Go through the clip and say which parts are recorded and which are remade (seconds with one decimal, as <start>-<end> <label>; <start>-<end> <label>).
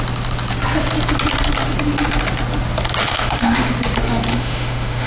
0.0-3.0 recorded; 3.0-3.7 remade; 3.7-4.3 recorded; 4.3-5.1 remade